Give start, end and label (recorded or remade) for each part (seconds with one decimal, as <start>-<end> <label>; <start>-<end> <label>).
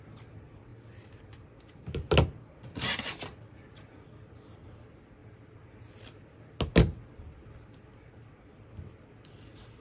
0.0-9.8 recorded